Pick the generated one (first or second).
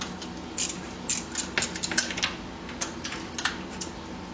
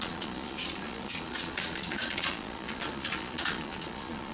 second